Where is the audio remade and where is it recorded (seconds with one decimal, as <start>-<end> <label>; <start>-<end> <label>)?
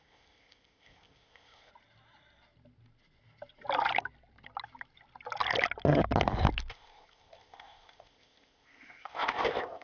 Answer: 0.0-1.7 remade; 1.7-6.7 recorded; 6.7-9.8 remade